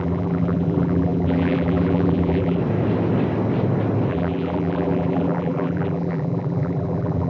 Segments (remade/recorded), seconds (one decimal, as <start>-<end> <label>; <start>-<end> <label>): 0.0-2.6 remade; 2.6-4.1 recorded; 4.1-7.3 remade